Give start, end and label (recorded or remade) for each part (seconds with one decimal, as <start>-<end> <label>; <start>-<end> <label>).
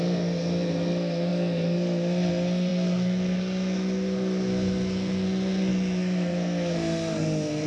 0.0-7.7 remade